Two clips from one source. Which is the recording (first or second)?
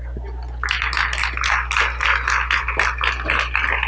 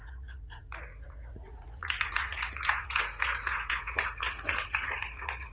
first